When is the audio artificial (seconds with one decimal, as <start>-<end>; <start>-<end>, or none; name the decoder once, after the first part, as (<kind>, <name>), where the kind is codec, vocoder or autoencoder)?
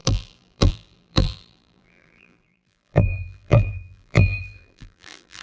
0.0-5.4 (vocoder, BigVGAN v2)